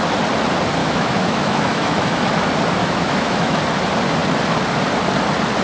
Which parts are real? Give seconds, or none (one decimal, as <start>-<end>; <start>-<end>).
0.0-0.8; 2.2-2.8; 3.6-5.6

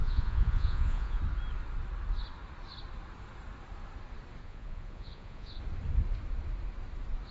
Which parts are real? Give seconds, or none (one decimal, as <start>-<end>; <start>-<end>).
1.2-4.4; 5.6-7.3